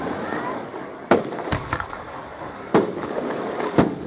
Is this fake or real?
fake